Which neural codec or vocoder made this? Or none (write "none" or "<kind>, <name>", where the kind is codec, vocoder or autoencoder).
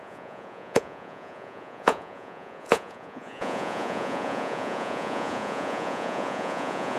vocoder, Vocos